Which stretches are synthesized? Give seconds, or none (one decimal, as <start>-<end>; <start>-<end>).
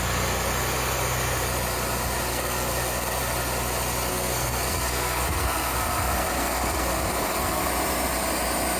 2.3-3.2; 4.1-7.6